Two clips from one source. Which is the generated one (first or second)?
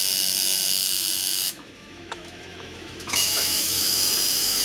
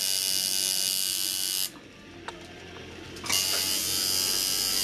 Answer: first